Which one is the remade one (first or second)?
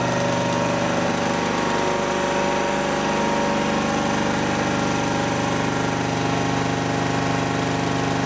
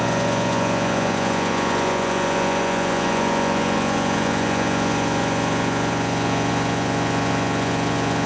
second